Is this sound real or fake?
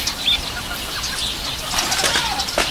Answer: real